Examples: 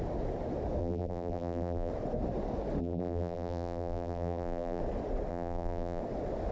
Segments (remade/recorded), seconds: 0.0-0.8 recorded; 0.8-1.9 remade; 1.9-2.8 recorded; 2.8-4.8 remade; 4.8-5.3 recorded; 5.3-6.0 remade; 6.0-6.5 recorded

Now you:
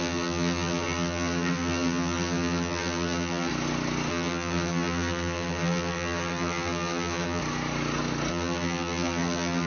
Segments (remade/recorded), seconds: 0.0-3.5 remade; 3.5-4.1 recorded; 4.1-7.4 remade; 7.4-8.3 recorded; 8.3-9.7 remade

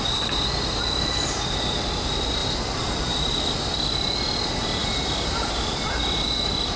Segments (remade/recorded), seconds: 0.0-2.4 recorded; 2.4-3.7 remade; 3.7-4.8 recorded; 4.8-5.9 remade; 5.9-6.8 recorded

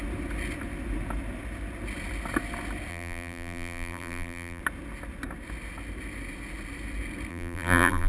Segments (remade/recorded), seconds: 0.0-2.9 recorded; 2.9-4.6 remade; 4.6-7.3 recorded; 7.3-8.1 remade

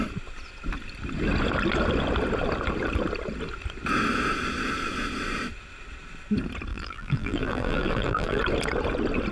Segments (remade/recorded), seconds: 0.0-6.7 recorded; 6.7-8.4 remade; 8.4-9.3 recorded

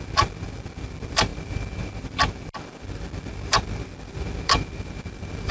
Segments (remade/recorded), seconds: 0.0-5.5 remade